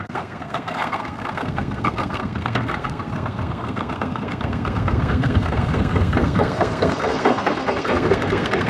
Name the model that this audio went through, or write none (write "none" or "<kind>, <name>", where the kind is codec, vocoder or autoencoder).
codec, SNAC